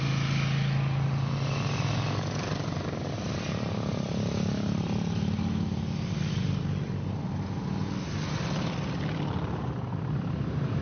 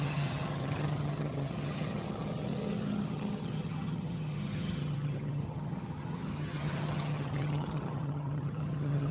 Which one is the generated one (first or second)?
second